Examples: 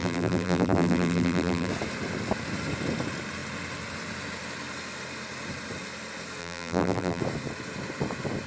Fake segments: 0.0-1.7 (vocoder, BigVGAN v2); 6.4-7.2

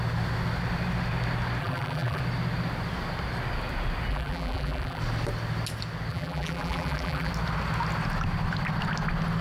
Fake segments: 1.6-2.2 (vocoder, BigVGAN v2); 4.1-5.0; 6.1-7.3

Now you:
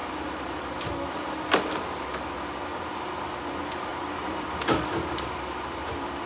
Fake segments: 0.0-0.6 (vocoder, BigVGAN v2); 3.9-6.3

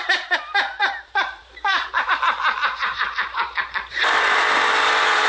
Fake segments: 0.8-2.1 (vocoder, BigVGAN v2); 2.8-5.3